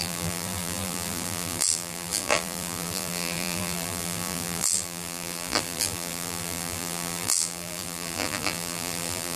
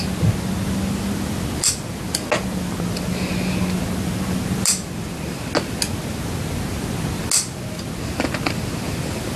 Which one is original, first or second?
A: second